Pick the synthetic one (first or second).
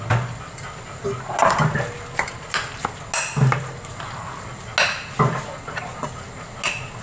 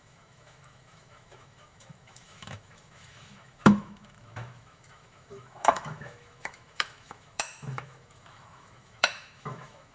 second